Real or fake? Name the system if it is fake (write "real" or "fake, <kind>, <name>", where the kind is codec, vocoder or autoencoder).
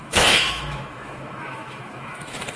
fake, autoencoder, DAC-VAE